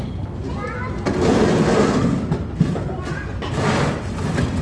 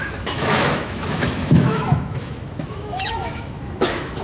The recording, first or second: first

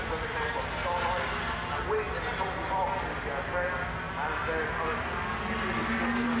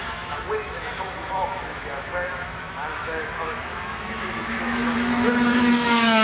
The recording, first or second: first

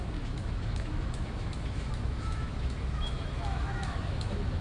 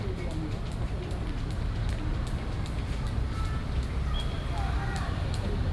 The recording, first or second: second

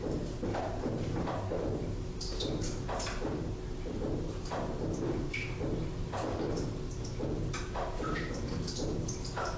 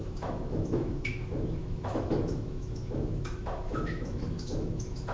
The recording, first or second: first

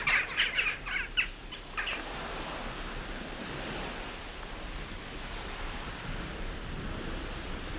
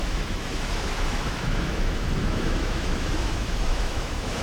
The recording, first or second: first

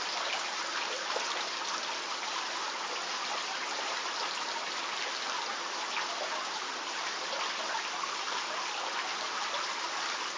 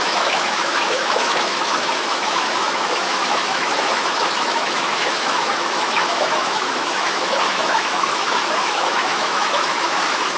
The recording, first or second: first